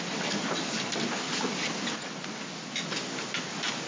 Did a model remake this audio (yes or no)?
no